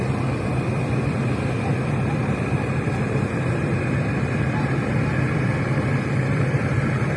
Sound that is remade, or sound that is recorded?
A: remade